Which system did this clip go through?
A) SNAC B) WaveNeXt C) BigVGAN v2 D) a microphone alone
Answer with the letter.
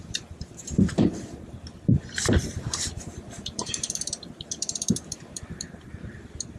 C